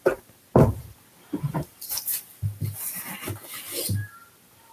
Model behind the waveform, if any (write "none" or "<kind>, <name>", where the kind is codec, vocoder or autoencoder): none